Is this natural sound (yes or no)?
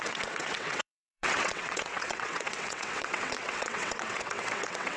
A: no